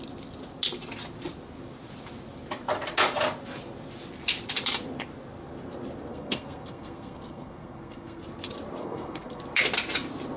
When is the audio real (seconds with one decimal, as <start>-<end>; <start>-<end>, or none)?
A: 0.0-6.1; 8.2-8.8; 9.4-10.4